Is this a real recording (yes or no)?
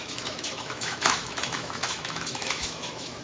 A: no